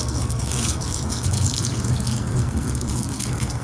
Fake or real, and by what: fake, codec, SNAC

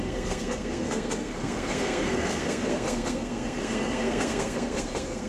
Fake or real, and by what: fake, codec, SNAC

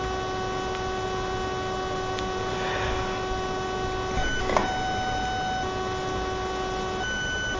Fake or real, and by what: real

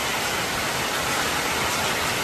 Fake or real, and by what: real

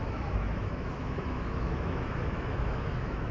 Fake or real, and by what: fake, autoencoder, DAC-VAE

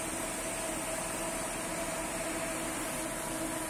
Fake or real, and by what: real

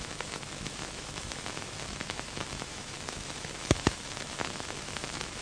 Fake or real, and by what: fake, autoencoder, DAC-VAE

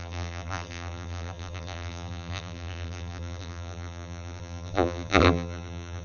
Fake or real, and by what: fake, vocoder, BigVGAN v2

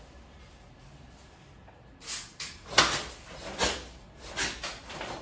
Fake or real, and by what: real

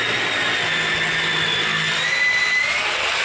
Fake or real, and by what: real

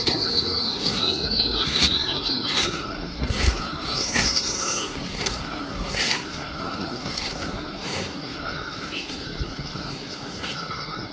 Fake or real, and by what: fake, codec, SNAC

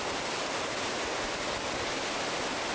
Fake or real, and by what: real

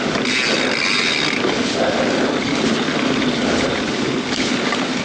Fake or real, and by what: real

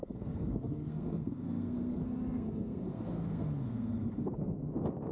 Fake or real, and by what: fake, codec, SNAC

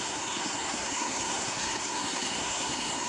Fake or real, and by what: fake, codec, SNAC